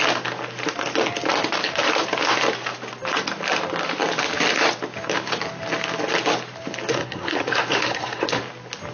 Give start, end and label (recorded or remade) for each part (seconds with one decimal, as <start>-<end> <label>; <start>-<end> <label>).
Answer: 0.0-6.9 recorded; 6.9-8.4 remade; 8.4-8.9 recorded

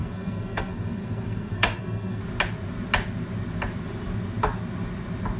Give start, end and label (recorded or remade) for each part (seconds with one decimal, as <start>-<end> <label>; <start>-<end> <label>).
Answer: 0.0-2.2 remade; 2.2-5.4 recorded

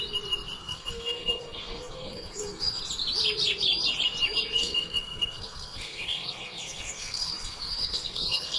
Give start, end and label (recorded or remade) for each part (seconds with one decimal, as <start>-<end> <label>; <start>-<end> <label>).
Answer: 0.0-0.6 recorded; 0.6-2.8 remade; 2.8-4.6 recorded; 4.6-8.6 remade

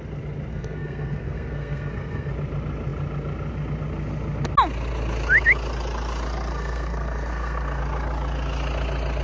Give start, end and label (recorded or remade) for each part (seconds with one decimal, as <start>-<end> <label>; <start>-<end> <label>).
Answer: 0.0-0.5 recorded; 0.5-2.3 remade; 2.3-6.5 recorded; 6.5-7.8 remade; 7.8-9.2 recorded

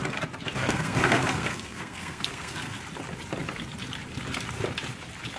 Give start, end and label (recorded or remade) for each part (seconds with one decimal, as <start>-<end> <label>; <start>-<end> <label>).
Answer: 0.0-0.6 recorded; 0.6-2.8 remade; 2.8-5.4 recorded